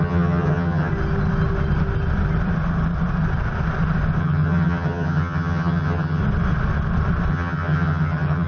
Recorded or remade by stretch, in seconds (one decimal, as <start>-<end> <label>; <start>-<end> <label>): 0.0-0.9 remade; 0.9-4.2 recorded; 4.2-6.2 remade; 6.2-7.3 recorded; 7.3-8.5 remade

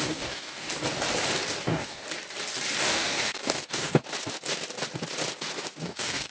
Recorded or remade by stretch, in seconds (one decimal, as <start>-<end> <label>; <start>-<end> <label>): 0.0-0.7 remade; 0.7-1.6 recorded; 1.6-2.0 remade; 2.0-2.8 recorded; 2.8-4.0 remade; 4.0-5.8 recorded; 5.8-6.3 remade

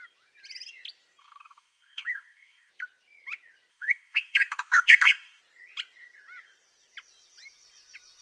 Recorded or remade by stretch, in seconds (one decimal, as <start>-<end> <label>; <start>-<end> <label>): 0.0-1.2 recorded; 1.2-2.7 remade; 2.7-3.7 recorded; 3.7-5.4 remade; 5.4-8.2 recorded

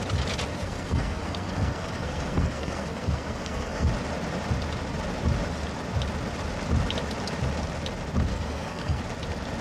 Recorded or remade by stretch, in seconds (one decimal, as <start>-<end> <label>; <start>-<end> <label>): 0.0-0.5 recorded; 0.5-3.9 remade; 3.9-8.3 recorded; 8.3-9.0 remade; 9.0-9.6 recorded